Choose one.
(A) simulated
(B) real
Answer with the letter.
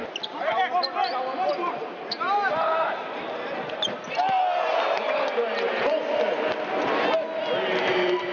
B